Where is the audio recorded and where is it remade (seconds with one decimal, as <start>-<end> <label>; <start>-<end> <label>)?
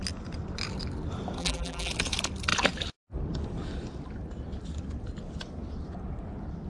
0.0-1.4 recorded; 1.4-1.9 remade; 1.9-6.7 recorded